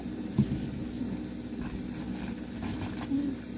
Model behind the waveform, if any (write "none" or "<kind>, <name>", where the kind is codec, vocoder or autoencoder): none